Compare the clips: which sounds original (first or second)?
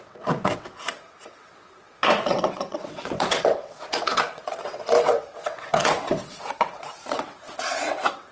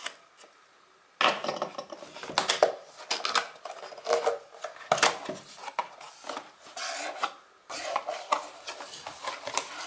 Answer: second